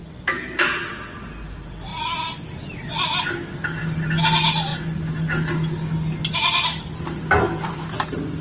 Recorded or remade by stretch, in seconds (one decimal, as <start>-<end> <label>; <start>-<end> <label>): 0.0-8.4 recorded